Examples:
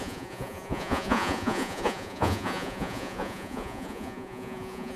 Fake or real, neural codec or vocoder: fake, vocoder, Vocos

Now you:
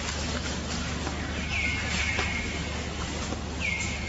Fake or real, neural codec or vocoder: real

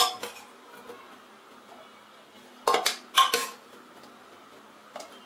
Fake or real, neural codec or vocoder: real